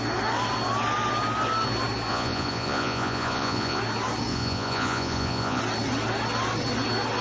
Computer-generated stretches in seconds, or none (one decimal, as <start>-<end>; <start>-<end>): 2.1-3.8; 4.3-5.6